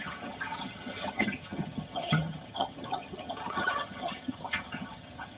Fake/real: fake